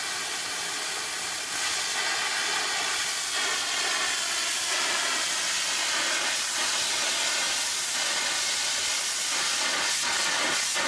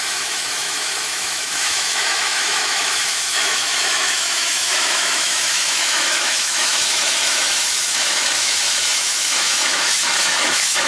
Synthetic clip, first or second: second